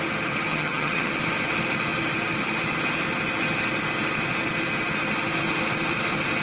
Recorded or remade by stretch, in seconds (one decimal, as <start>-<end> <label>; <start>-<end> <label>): 0.0-0.5 recorded; 0.5-1.1 remade; 1.1-6.4 recorded